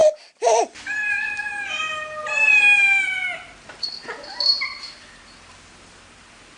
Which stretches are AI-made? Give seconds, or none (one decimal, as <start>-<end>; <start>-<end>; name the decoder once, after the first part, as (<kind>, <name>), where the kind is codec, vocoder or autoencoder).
0.0-1.1 (vocoder, BigVGAN v2)